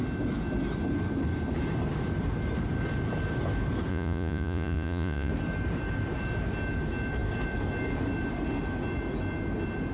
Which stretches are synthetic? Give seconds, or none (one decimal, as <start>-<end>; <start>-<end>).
3.9-5.3